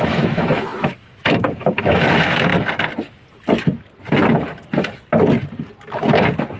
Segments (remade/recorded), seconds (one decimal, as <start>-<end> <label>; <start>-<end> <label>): 0.0-2.5 remade; 2.5-6.6 recorded